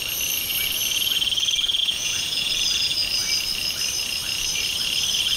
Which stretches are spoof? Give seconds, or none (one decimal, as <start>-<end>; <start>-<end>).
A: 1.8-2.5